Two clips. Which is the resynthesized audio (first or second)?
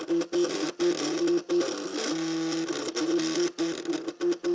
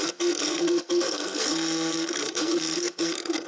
second